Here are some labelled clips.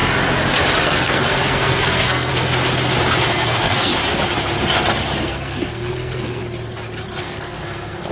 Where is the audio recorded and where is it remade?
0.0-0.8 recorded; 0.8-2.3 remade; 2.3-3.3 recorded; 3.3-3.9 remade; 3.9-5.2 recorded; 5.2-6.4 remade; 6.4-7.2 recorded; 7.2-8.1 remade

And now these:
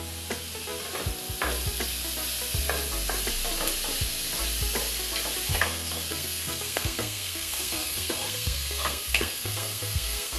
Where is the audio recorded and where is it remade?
0.0-5.5 recorded; 5.5-10.4 remade